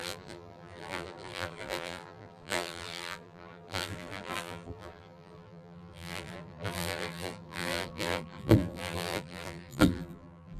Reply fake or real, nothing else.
fake